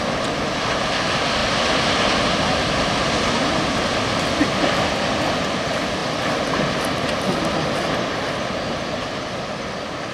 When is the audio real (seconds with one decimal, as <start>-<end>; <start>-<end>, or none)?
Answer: 0.0-10.1